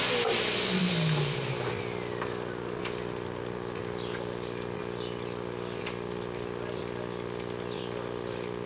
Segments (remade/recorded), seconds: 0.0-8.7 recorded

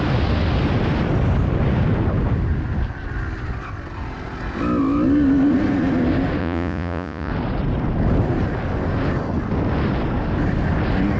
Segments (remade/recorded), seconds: 0.0-6.4 recorded; 6.4-7.3 remade; 7.3-11.2 recorded

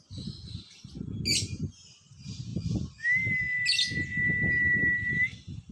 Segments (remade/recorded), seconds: 0.0-5.7 recorded

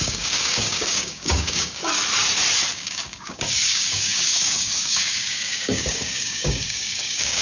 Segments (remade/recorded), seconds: 0.0-1.8 remade; 1.8-2.7 recorded; 2.7-7.4 remade

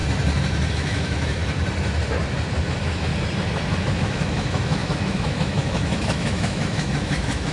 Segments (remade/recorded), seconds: 0.0-0.7 recorded; 0.7-1.4 remade; 1.4-2.6 recorded; 2.6-3.1 remade; 3.1-3.8 recorded; 3.8-7.5 remade

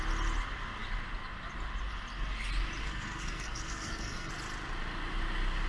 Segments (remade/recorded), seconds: 0.0-2.8 recorded; 2.8-4.3 remade; 4.3-5.7 recorded